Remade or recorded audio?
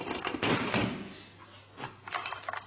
recorded